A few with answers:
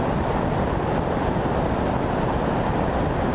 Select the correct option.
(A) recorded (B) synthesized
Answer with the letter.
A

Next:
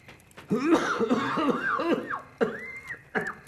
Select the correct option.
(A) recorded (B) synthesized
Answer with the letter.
A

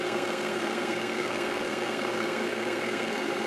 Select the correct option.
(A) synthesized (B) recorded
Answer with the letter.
A